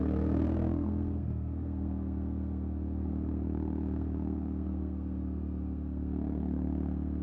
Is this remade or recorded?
remade